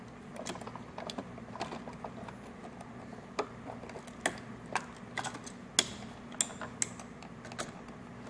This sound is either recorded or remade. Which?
recorded